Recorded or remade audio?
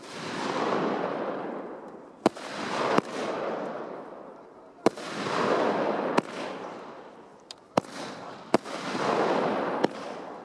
remade